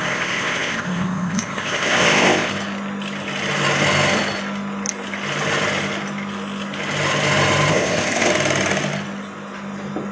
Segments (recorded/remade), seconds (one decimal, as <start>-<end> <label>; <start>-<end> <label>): 0.0-2.5 remade; 2.5-7.7 recorded; 7.7-8.3 remade; 8.3-10.1 recorded